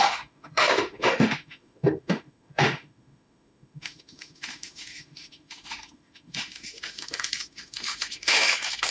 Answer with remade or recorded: remade